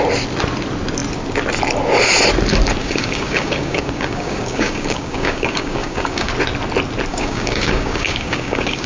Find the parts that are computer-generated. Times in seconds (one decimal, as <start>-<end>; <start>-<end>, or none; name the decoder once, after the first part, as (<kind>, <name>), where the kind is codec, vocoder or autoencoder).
2.8-6.3 (codec, DAC); 7.1-8.9